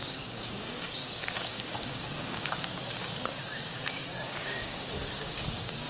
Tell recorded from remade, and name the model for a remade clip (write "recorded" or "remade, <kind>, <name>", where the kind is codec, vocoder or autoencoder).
remade, codec, DAC